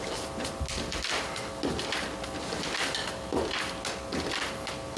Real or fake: real